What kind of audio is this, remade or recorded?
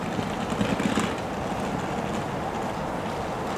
recorded